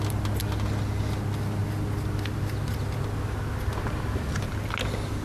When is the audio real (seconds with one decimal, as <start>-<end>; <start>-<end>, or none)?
0.0-5.2